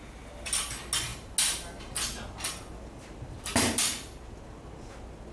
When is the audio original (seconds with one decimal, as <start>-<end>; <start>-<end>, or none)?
0.0-5.3